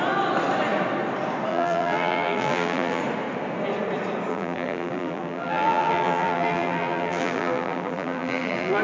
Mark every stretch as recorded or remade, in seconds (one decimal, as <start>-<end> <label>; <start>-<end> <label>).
0.0-1.5 recorded; 1.5-3.0 remade; 3.0-4.3 recorded; 4.3-8.8 remade